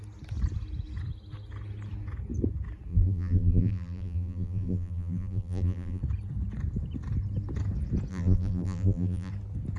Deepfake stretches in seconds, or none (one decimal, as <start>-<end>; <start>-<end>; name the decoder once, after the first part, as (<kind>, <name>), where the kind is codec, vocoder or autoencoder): 2.9-6.0 (vocoder, BigVGAN v2); 8.1-9.3